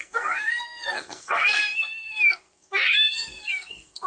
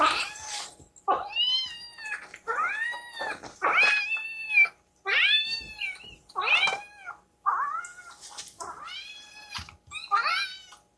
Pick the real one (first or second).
second